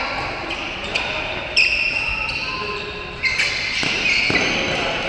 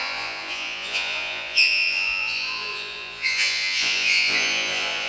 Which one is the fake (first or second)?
second